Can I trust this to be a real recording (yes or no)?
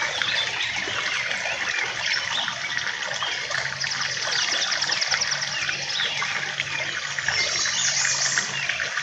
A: yes